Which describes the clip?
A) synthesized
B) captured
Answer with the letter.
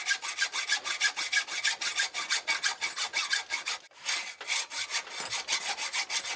B